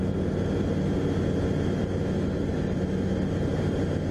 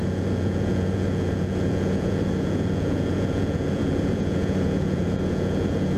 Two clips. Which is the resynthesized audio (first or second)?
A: second